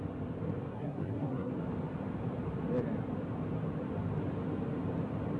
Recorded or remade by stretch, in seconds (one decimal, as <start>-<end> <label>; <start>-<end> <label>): 0.0-0.7 recorded; 0.7-1.5 remade; 1.5-5.4 recorded